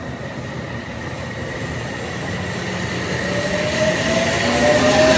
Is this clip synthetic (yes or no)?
no